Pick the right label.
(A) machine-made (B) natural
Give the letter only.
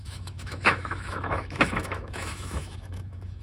A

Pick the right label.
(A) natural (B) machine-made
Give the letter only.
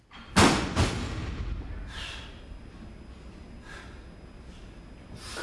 A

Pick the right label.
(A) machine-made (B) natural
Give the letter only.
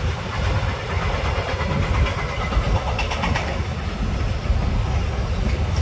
B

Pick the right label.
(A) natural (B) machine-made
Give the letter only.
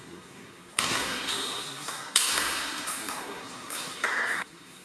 B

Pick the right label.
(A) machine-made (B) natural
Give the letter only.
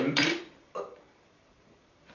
A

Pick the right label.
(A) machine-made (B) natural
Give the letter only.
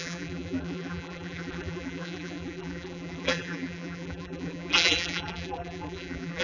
A